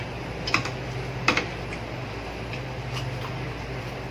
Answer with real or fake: fake